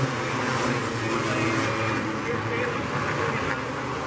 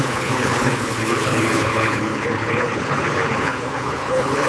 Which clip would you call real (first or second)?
first